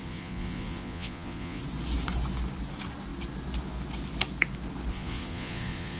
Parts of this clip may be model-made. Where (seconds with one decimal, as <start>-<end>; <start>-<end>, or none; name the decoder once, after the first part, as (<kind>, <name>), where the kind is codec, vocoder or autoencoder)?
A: 0.0-1.6 (vocoder, Vocos); 4.9-6.0